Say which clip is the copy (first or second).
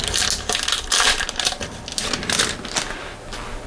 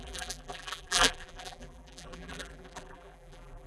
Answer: second